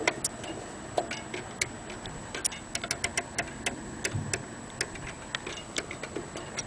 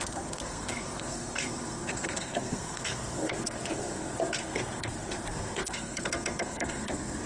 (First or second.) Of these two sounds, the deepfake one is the second